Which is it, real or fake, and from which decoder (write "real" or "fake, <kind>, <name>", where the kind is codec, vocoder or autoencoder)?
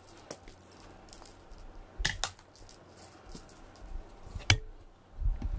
real